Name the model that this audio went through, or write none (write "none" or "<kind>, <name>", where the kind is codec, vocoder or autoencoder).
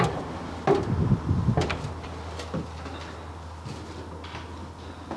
none